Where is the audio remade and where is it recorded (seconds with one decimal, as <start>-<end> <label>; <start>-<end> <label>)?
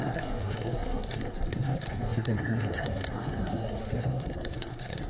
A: 0.0-5.1 remade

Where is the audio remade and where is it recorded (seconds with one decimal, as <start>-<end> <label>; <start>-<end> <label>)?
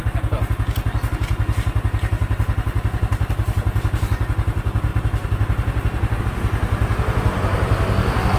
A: 0.0-8.4 recorded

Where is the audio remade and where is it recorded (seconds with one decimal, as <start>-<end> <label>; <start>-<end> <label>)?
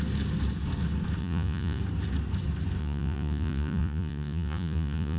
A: 0.0-1.2 recorded; 1.2-1.8 remade; 1.8-2.8 recorded; 2.8-5.2 remade